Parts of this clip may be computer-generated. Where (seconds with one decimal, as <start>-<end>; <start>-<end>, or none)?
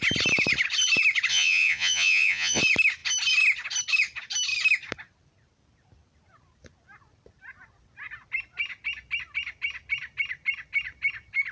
1.3-2.6